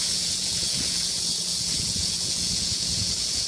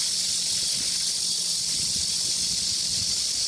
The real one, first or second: second